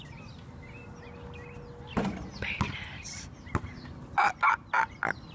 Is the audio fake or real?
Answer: real